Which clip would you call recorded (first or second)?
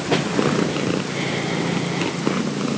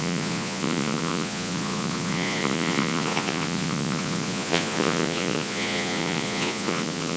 first